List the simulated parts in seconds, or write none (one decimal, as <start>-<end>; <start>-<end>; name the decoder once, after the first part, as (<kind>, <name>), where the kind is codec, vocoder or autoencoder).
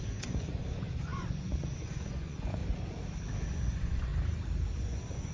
0.0-2.6 (vocoder, Vocos); 3.5-4.1; 4.8-5.3